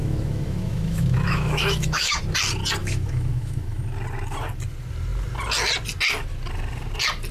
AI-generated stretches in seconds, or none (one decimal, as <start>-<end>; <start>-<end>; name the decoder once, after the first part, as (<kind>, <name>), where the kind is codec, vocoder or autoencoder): 0.0-2.2 (autoencoder, DAC-VAE); 2.8-3.8

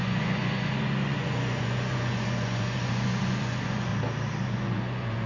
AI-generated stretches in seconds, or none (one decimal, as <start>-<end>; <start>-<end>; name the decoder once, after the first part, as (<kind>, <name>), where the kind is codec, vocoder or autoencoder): 0.0-3.9 (vocoder, Vocos); 4.4-5.3

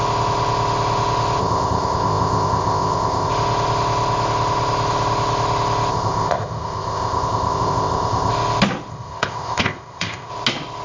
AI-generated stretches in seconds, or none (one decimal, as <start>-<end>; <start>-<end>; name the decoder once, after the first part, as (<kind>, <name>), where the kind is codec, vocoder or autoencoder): 1.4-3.3 (codec, ZipCodec); 5.9-8.3; 8.9-10.3